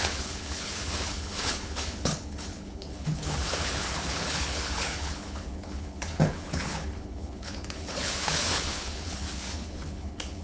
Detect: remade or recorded remade